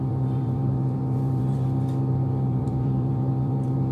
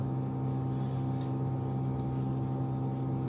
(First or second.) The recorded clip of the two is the second